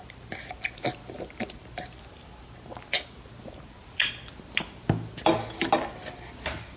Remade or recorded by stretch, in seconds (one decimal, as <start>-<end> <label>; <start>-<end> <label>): 0.0-6.8 recorded